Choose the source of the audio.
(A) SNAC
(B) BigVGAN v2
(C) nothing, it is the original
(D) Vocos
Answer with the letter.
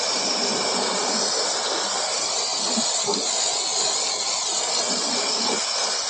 C